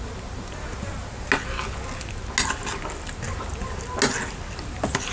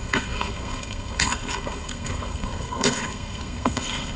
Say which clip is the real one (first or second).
first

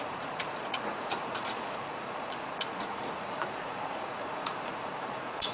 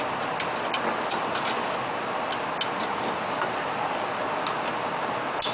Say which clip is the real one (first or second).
second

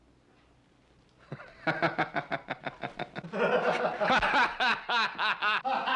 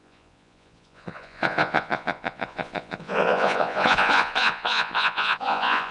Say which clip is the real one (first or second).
first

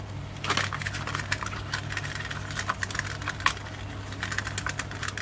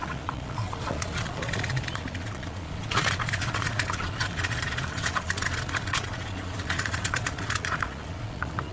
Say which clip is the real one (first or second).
first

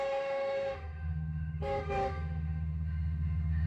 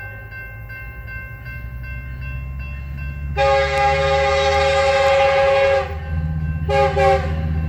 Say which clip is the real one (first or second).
second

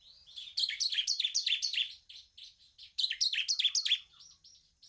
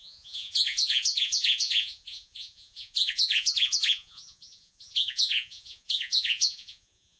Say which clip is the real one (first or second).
first